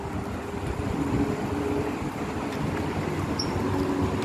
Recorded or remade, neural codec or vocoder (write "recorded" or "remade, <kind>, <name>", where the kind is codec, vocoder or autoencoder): recorded